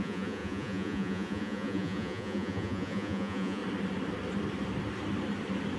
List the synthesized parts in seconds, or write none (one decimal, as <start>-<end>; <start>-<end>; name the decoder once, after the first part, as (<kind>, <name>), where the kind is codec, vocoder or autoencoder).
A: 0.0-3.6 (vocoder, Vocos)